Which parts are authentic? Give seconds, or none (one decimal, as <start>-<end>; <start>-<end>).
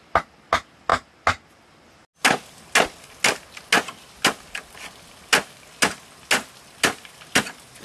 0.0-7.8